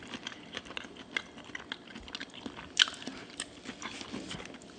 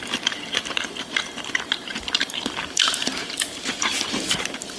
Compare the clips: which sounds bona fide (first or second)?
first